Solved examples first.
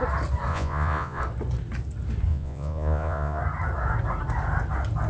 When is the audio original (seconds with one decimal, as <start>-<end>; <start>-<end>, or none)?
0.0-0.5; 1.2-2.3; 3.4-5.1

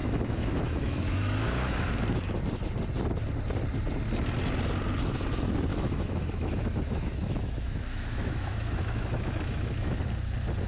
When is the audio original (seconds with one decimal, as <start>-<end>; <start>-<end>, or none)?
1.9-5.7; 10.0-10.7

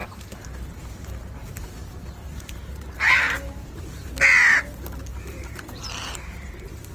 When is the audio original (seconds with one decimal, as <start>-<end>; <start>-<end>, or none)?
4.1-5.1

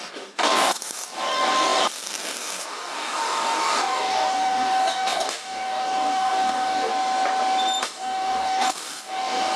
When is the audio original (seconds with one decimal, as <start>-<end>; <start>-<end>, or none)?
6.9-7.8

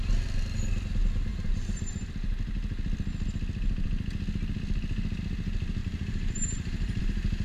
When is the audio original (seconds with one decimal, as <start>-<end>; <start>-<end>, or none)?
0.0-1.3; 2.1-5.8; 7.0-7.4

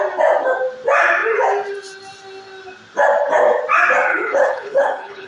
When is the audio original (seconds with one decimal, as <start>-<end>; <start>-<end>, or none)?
0.0-4.1